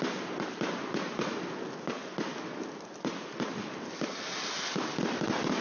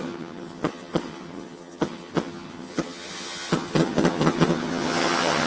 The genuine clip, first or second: first